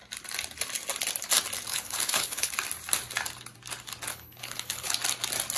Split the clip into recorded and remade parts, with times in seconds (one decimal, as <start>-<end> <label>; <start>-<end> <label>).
0.0-1.7 recorded; 1.7-2.5 remade; 2.5-4.1 recorded; 4.1-4.9 remade; 4.9-5.6 recorded